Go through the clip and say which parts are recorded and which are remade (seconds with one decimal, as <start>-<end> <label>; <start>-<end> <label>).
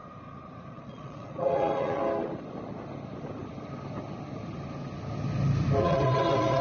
0.0-0.7 recorded; 0.7-2.0 remade; 2.0-5.8 recorded; 5.8-6.6 remade